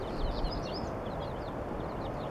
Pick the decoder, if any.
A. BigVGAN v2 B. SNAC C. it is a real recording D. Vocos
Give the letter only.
C